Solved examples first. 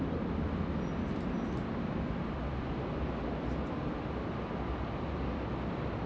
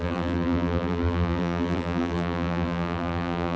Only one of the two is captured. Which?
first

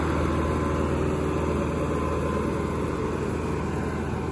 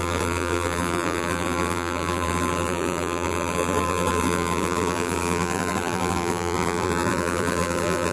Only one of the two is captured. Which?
first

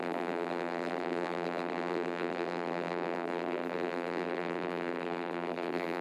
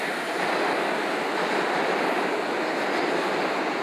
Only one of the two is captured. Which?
second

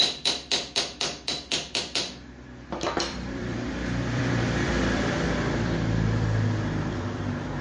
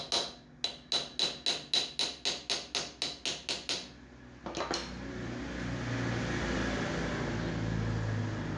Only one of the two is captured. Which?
second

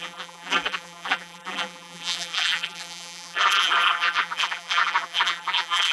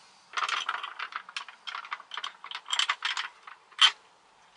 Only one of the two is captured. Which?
second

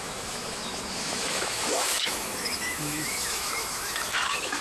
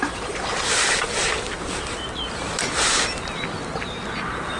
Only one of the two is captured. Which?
second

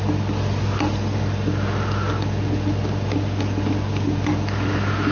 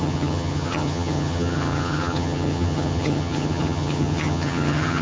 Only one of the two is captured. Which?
first